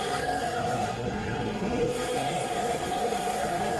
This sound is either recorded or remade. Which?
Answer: remade